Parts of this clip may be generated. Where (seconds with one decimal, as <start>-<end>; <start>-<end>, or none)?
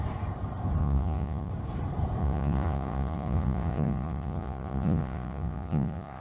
0.8-1.5; 2.2-6.2